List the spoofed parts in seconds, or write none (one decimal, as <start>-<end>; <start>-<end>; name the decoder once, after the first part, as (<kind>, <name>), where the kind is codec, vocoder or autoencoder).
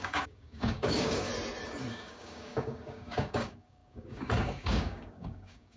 0.0-1.3 (codec, DAC); 1.9-5.8